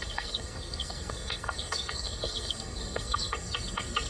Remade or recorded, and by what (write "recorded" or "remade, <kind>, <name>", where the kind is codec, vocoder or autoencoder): remade, codec, SNAC